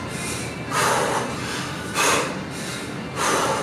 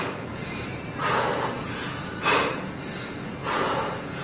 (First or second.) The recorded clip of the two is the first